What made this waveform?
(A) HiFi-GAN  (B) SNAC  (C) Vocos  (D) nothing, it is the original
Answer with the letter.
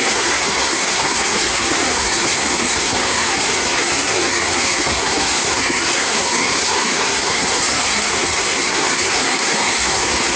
B